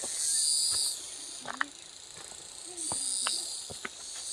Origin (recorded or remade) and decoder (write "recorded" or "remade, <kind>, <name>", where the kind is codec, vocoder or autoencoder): recorded